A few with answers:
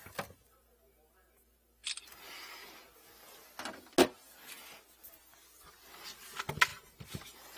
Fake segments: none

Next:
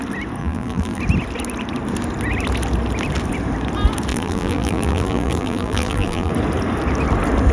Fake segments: 0.4-1.0; 4.1-6.3

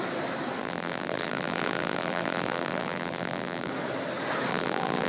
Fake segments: 0.6-3.7; 4.5-5.1

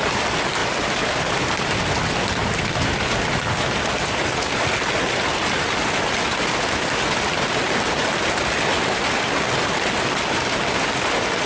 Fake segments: 0.6-1.8

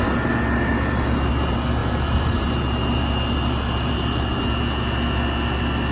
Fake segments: 0.7-1.3; 1.8-4.4

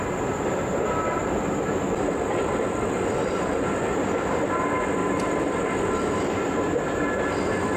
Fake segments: 1.2-3.8

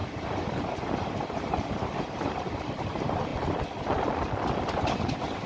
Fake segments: 0.0-3.3; 4.7-5.5